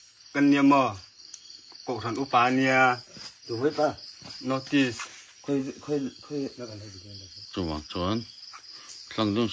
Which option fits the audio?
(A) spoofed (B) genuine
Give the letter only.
B